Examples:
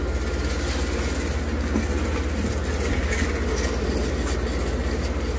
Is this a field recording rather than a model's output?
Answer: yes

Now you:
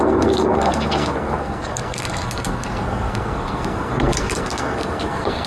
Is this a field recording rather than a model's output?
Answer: no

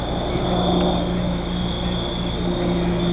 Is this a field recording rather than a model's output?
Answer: yes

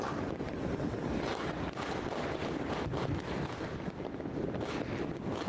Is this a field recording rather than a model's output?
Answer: yes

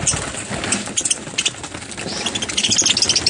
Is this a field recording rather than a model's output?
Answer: yes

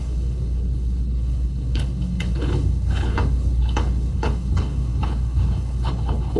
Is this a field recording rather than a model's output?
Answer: no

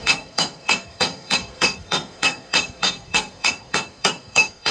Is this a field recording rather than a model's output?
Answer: no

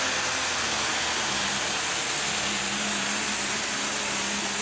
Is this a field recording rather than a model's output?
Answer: yes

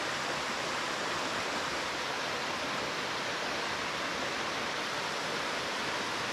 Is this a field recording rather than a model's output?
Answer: yes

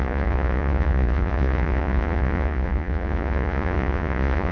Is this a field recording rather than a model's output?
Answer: no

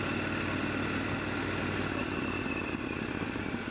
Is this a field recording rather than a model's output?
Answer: yes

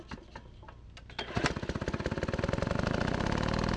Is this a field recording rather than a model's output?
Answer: yes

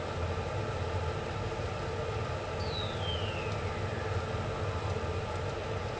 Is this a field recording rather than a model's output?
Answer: yes